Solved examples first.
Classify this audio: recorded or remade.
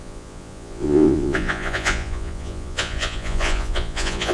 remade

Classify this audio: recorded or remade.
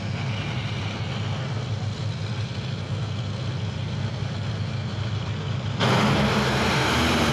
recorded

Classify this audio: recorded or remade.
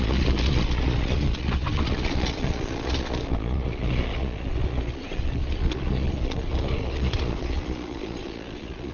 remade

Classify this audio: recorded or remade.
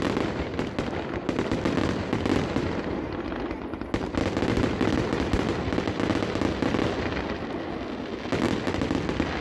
recorded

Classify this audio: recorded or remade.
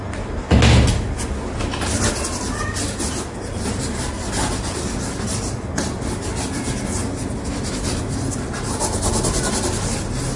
recorded